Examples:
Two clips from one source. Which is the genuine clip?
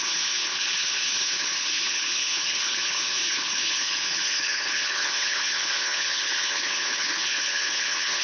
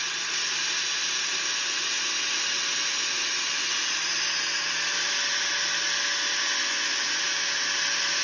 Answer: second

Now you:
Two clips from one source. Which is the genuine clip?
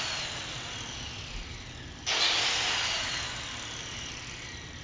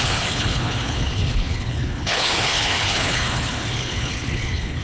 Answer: first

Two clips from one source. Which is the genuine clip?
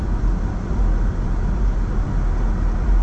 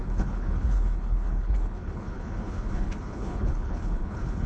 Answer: first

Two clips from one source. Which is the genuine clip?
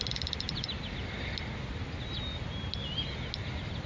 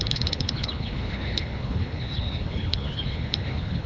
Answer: first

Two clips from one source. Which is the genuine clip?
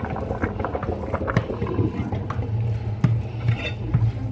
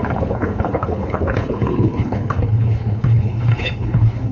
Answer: first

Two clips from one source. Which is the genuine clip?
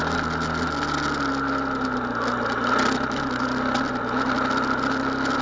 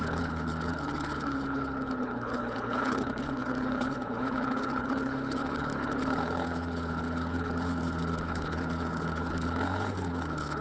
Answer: first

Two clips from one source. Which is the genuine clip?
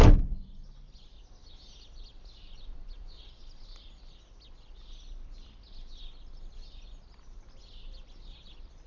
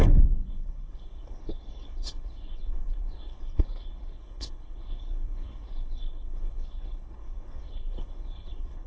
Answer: first